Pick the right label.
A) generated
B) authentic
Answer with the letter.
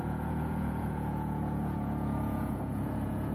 A